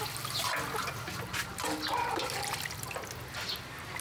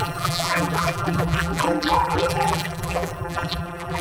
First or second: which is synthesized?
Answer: second